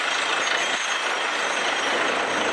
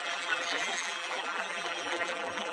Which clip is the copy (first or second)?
second